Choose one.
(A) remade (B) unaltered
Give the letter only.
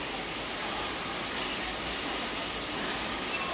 B